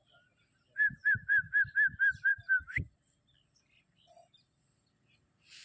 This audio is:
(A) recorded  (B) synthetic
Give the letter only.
B